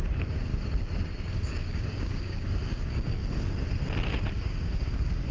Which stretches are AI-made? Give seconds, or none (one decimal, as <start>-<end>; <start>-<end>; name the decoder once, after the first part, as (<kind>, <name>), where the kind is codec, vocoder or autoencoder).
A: 0.0-0.5 (codec, DAC); 1.1-3.2; 4.3-5.3